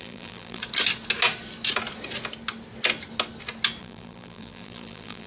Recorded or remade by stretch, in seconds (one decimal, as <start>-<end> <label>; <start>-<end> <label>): 0.0-0.6 remade; 0.6-3.8 recorded; 3.8-5.3 remade